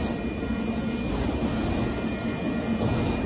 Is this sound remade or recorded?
recorded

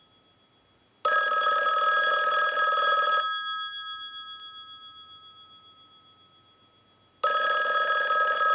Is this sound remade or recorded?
recorded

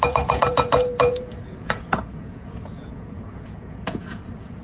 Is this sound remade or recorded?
remade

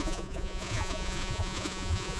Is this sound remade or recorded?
remade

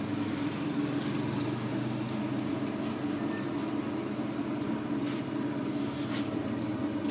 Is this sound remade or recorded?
recorded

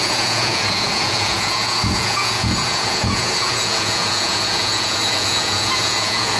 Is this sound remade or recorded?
remade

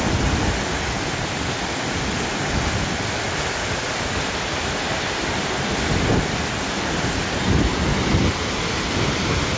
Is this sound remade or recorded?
recorded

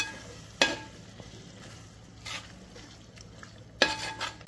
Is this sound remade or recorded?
recorded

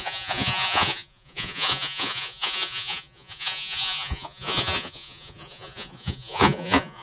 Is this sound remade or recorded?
remade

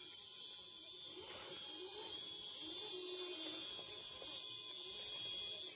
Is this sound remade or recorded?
recorded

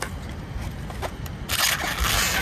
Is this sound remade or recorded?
recorded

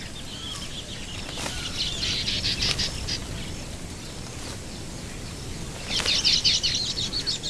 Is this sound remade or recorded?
recorded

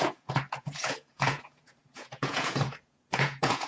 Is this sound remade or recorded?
remade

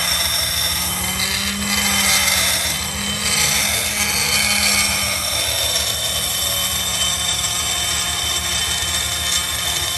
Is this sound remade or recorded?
recorded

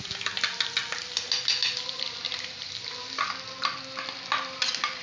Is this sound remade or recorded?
recorded